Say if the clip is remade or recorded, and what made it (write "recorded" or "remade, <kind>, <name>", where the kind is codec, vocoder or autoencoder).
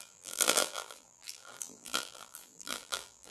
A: remade, vocoder, BigVGAN v2